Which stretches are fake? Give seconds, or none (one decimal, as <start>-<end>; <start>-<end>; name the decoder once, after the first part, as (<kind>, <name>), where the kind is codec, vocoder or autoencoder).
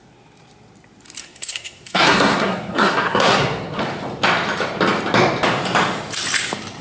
1.2-3.8 (codec, SNAC)